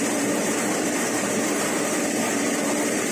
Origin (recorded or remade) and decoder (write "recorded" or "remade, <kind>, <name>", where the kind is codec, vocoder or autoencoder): remade, vocoder, BigVGAN v2